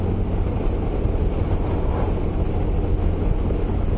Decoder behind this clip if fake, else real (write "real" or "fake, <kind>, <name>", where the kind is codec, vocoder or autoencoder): real